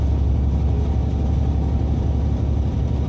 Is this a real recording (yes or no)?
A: yes